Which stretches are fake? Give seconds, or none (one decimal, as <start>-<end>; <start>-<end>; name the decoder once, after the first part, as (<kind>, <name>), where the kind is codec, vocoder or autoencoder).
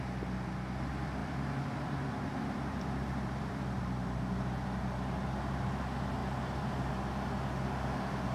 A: 1.2-5.4 (vocoder, BigVGAN v2); 6.2-6.9